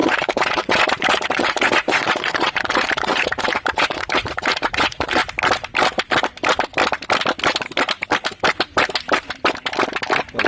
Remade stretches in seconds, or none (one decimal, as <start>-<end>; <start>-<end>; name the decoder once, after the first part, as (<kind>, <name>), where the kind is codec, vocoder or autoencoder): 0.0-5.2 (vocoder, Vocos)